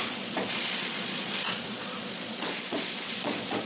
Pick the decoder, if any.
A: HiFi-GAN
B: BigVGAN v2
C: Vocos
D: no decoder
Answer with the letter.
C